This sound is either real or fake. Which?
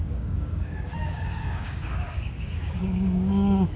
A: fake